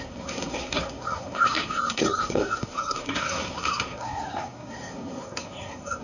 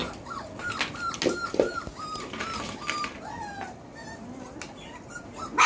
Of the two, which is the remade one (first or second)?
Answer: first